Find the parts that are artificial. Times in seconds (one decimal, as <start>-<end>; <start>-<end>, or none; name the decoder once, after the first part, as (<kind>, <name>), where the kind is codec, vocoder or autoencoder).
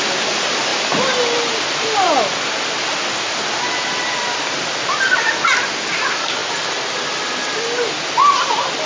none